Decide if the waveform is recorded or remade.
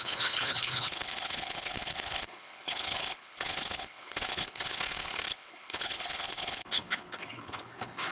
remade